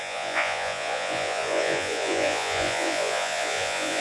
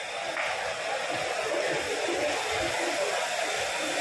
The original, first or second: second